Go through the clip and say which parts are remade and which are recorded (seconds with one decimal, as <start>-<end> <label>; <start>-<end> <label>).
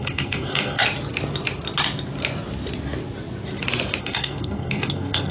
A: 0.0-0.8 remade; 0.8-4.0 recorded; 4.0-5.3 remade